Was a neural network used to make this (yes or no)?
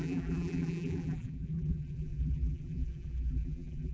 yes